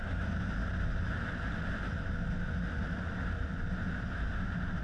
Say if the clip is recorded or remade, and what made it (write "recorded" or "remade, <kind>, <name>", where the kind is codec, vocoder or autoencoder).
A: recorded